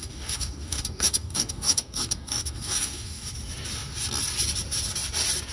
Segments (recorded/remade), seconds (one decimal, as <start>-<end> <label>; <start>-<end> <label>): 0.0-3.3 remade; 3.3-5.5 recorded